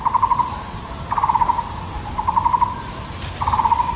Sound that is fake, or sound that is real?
real